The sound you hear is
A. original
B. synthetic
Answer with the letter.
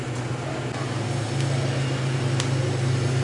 A